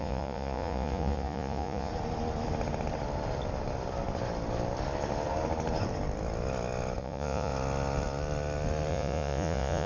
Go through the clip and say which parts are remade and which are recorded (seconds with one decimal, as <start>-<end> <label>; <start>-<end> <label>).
0.0-1.9 remade; 1.9-7.0 recorded; 7.0-7.5 remade; 7.5-8.9 recorded; 8.9-9.9 remade